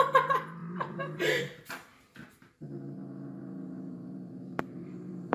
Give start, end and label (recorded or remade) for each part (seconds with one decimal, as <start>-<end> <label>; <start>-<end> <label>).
0.0-1.9 remade; 1.9-3.4 recorded; 3.4-5.3 remade